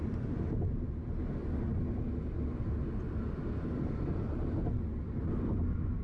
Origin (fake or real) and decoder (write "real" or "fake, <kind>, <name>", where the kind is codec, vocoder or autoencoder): real